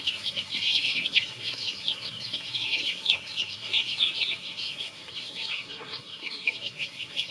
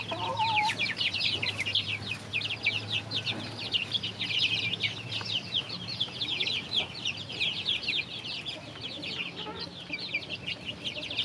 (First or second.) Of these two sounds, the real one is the second